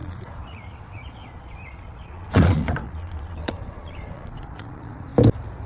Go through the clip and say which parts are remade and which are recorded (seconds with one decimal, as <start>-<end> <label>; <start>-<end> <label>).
0.0-5.1 remade; 5.1-5.7 recorded